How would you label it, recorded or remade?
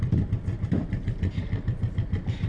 recorded